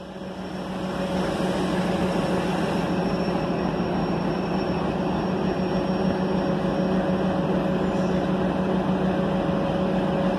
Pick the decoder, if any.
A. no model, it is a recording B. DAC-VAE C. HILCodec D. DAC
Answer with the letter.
A